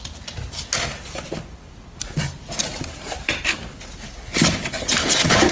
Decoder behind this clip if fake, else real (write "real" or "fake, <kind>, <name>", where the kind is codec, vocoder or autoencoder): real